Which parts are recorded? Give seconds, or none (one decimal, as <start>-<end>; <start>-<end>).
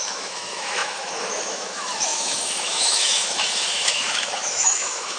none